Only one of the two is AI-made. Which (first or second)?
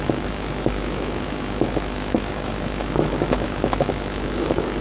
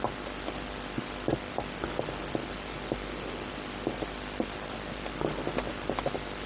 first